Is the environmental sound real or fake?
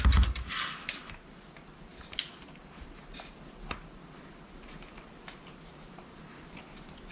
real